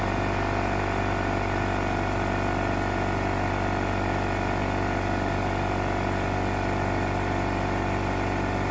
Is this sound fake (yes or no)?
no